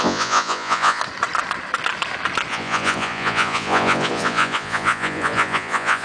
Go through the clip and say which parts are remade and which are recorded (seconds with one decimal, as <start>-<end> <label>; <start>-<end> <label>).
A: 0.0-1.0 remade; 1.0-2.5 recorded; 2.5-6.0 remade